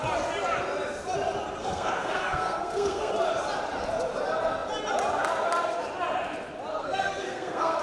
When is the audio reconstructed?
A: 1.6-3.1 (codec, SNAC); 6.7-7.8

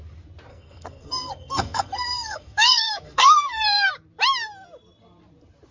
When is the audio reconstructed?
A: 0.5-3.9 (codec, SNAC)

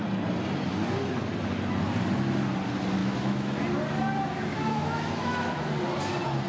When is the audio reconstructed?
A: 3.0-3.6 (autoencoder, DAC-VAE); 4.5-5.7

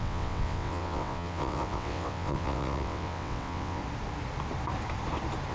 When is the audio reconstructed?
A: 0.0-3.8 (vocoder, WaveNeXt)

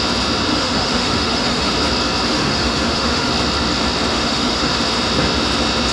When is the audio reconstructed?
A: 0.5-1.7 (autoencoder, DAC-VAE); 2.3-3.3; 4.1-4.8

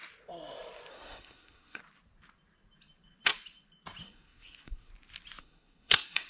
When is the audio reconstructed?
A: 0.9-1.8 (codec, SNAC); 4.0-4.9; 5.4-6.3

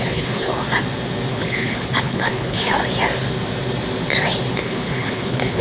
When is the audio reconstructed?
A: 0.0-0.5 (codec, HILCodec); 1.3-2.8; 4.5-5.6

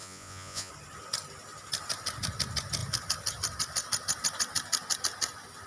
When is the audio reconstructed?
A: 0.0-0.7 (vocoder, Vocos)